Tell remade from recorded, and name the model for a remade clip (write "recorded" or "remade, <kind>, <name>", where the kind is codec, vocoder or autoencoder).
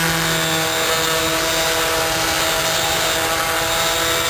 recorded